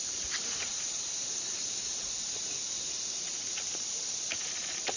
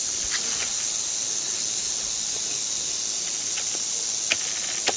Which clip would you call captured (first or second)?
second